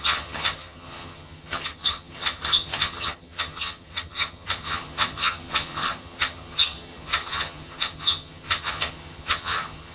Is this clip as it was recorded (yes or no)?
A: no